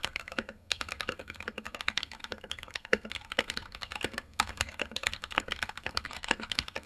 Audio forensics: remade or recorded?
remade